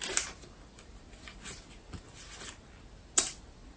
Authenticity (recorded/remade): recorded